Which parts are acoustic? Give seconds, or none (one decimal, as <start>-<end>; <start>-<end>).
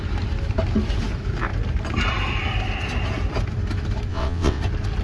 0.0-4.1; 4.6-5.0